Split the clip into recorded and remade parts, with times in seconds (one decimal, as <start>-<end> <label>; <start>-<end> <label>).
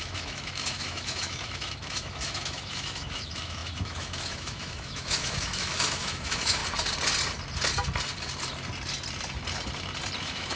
0.0-6.6 remade; 6.6-10.2 recorded; 10.2-10.6 remade